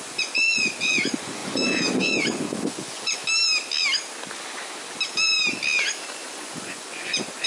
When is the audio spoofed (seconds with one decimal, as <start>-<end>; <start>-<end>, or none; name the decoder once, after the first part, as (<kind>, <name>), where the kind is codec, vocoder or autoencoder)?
0.0-3.2 (vocoder, Vocos); 6.0-7.5